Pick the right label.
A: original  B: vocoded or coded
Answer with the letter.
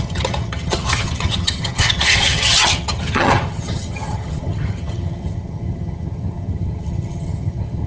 B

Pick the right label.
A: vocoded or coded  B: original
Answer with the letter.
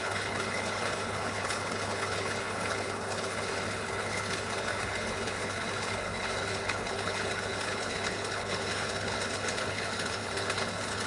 A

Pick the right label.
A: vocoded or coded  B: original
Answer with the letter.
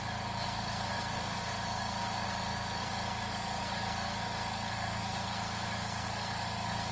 A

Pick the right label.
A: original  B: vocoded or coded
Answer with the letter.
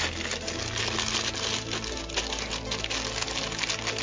A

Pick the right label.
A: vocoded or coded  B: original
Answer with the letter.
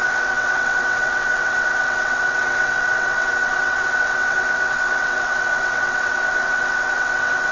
A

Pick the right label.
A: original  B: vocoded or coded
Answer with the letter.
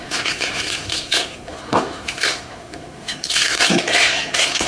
B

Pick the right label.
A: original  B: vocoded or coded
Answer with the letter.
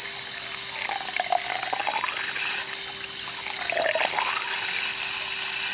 A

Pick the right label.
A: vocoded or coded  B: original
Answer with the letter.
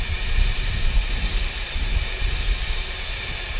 B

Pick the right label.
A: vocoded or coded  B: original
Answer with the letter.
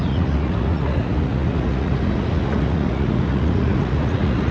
A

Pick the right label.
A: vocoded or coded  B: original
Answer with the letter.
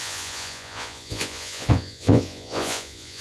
A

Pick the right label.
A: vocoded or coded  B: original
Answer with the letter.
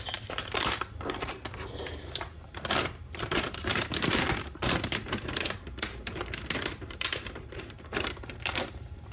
A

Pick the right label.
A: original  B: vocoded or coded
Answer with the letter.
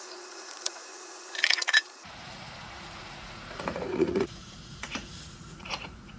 B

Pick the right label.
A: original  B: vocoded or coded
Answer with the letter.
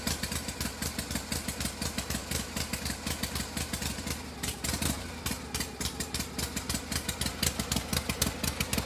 A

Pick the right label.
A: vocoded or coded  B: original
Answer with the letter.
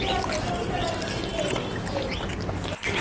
B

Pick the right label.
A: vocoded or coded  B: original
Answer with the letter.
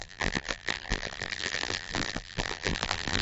A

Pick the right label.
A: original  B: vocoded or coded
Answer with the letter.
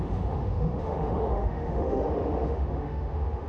B